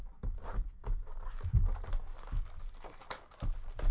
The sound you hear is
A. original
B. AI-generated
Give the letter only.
A